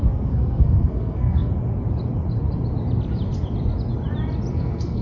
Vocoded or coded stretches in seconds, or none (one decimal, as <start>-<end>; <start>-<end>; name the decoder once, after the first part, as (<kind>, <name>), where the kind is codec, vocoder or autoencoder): 0.0-1.5 (codec, SNAC); 4.5-5.0